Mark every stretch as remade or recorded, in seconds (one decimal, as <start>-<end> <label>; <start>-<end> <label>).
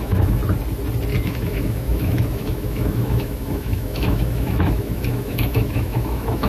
0.0-0.4 remade; 0.4-1.2 recorded; 1.2-6.5 remade